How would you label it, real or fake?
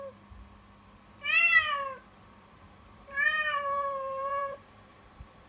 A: fake